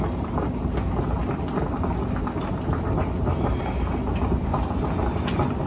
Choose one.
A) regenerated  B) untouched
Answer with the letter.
B